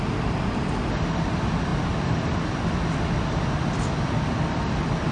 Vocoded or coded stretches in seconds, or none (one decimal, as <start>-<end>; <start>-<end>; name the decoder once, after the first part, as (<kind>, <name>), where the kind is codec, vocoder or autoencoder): none